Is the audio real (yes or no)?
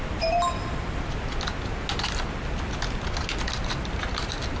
yes